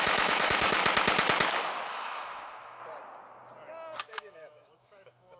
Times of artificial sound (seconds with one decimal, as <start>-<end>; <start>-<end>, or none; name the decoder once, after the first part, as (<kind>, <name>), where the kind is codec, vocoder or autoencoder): 0.0-0.8 (autoencoder, DAC-VAE); 1.9-2.8; 4.0-5.4